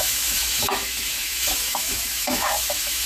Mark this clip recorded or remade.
remade